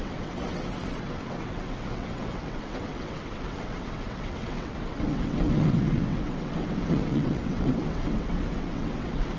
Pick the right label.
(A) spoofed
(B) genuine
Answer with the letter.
A